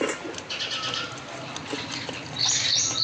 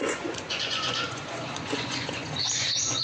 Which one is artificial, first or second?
second